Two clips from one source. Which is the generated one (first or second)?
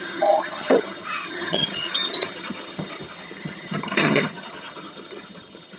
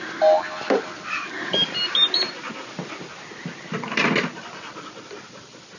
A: first